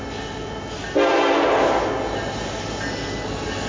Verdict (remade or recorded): recorded